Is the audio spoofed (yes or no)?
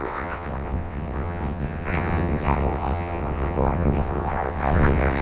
yes